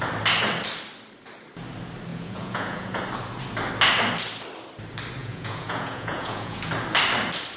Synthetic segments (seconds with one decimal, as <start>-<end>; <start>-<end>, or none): 2.1-3.0; 5.2-6.7